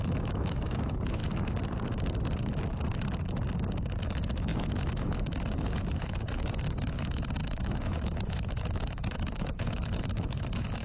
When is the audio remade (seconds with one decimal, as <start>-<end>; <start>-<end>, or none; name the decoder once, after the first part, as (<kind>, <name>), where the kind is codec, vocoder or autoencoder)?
0.0-1.2 (autoencoder, DAC-VAE); 4.0-10.8